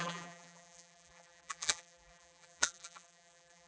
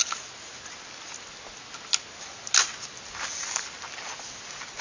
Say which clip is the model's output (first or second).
first